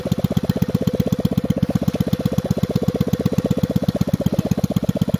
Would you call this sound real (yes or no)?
yes